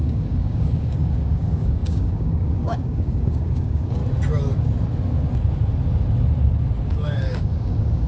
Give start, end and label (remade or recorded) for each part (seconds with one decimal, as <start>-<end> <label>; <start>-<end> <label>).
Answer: 0.0-4.0 remade; 4.0-6.9 recorded; 6.9-8.1 remade